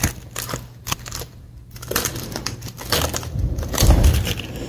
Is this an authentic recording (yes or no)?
no